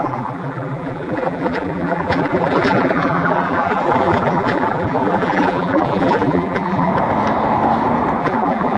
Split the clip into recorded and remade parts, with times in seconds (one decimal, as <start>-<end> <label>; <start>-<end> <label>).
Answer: 0.0-6.9 remade; 6.9-8.2 recorded; 8.2-8.8 remade